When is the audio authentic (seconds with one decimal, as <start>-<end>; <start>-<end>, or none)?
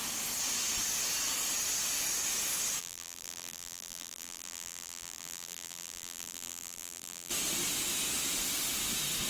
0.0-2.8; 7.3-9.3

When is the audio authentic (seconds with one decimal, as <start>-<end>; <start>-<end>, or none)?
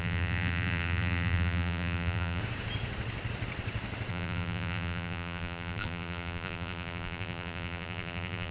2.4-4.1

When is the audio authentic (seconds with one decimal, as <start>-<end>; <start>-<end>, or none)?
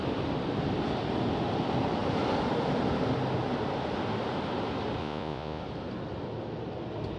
0.0-5.0; 5.6-7.2